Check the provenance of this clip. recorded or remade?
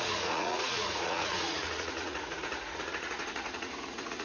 remade